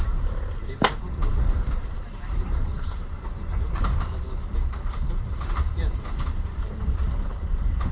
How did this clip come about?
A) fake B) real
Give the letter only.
A